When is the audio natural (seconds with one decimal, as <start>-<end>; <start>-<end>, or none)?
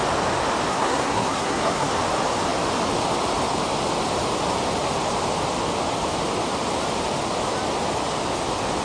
0.0-0.7; 1.9-8.8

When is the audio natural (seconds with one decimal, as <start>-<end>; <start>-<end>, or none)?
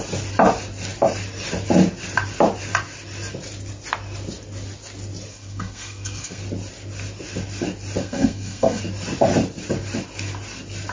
0.0-5.3; 6.4-8.0; 8.8-10.9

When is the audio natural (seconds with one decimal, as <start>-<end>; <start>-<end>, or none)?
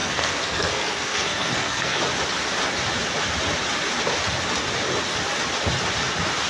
2.0-6.5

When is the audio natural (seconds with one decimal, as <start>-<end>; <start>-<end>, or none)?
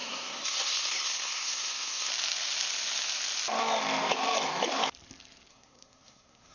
2.1-5.5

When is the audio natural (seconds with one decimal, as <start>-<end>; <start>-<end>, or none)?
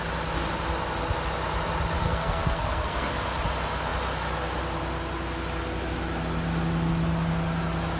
0.0-2.0; 3.1-8.0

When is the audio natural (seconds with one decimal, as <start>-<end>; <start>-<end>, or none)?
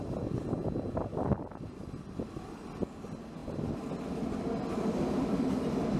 0.0-6.0